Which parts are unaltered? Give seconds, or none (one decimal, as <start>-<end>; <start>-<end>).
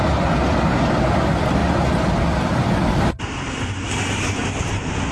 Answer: 0.0-5.1